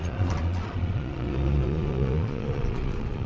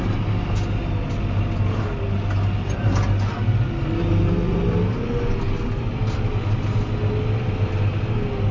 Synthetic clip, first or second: first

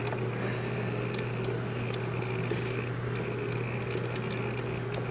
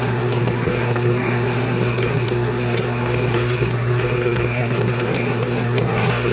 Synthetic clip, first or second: second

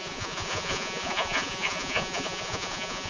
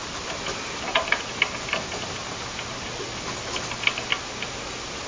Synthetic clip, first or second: first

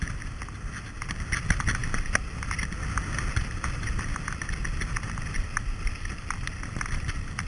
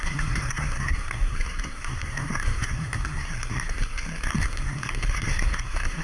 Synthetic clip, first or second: second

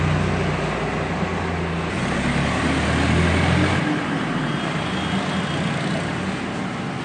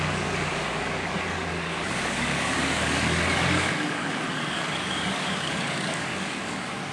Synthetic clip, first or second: second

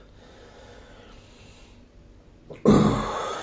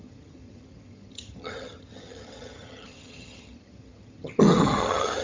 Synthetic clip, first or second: second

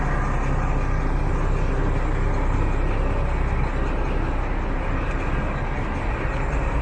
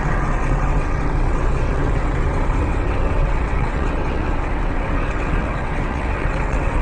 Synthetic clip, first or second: second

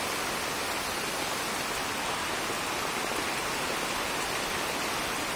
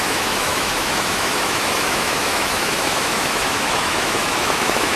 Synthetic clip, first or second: second